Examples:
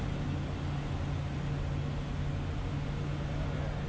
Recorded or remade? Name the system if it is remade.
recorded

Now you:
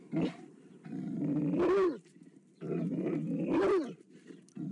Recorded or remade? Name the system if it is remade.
recorded